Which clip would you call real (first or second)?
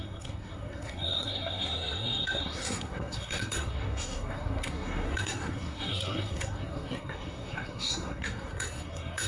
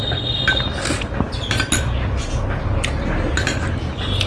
second